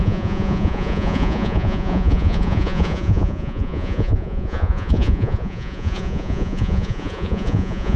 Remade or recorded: remade